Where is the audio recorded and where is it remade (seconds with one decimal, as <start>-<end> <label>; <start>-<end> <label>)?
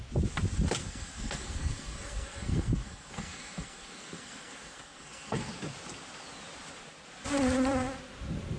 0.0-0.8 recorded; 0.8-5.5 remade; 5.5-8.6 recorded